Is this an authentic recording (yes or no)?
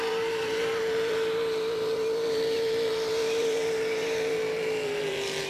no